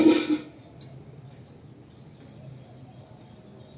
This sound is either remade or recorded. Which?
recorded